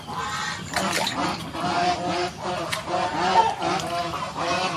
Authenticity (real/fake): real